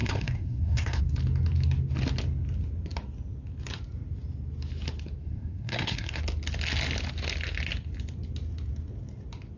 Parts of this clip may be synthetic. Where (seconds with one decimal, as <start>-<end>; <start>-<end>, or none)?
0.0-1.0; 5.2-6.2